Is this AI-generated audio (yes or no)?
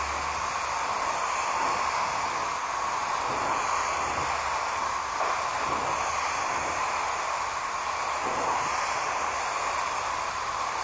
no